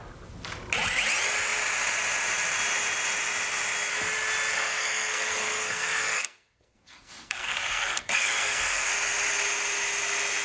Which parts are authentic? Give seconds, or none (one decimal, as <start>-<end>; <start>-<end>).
0.0-4.5; 8.9-10.4